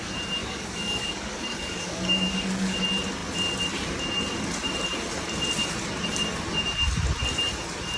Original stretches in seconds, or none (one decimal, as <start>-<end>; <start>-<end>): 0.0-0.4; 2.8-8.0